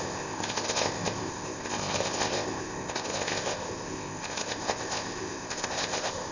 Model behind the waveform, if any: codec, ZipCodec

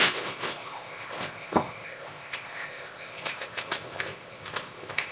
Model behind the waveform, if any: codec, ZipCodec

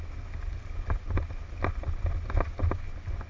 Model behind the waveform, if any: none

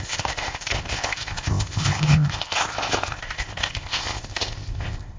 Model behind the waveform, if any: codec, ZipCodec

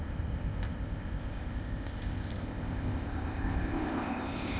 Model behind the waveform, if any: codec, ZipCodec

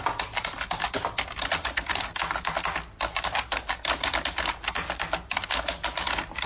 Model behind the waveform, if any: none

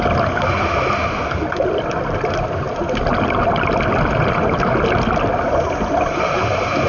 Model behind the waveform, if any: none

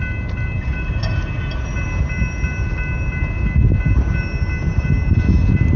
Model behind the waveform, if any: none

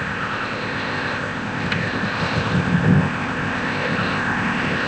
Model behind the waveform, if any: codec, ZipCodec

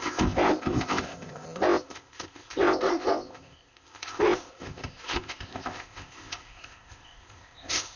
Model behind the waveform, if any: codec, ZipCodec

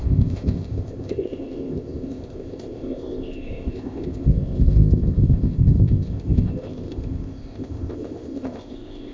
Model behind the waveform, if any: codec, ZipCodec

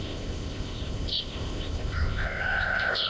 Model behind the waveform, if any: codec, ZipCodec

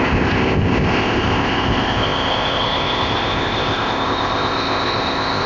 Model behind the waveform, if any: codec, ZipCodec